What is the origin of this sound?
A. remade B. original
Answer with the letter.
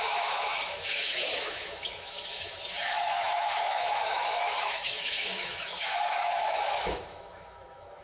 A